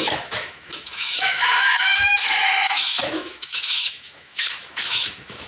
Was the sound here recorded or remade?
remade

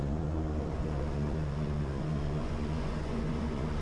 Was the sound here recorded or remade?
remade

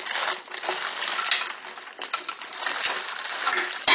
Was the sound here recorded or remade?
recorded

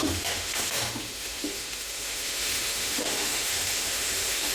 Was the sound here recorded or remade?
remade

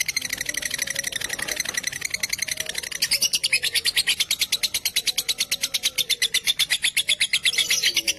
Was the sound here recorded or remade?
recorded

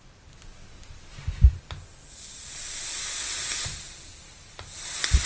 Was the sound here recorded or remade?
recorded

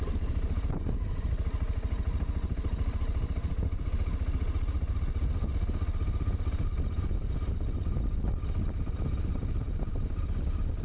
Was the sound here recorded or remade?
recorded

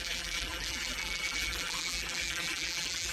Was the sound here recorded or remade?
remade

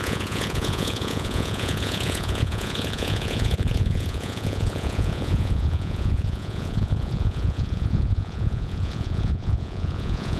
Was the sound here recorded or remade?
remade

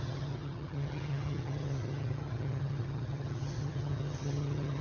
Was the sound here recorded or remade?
remade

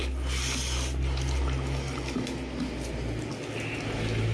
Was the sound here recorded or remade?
recorded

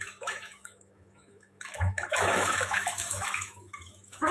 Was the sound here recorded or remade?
remade